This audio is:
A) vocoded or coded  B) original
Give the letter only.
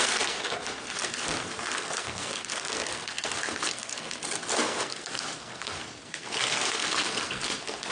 A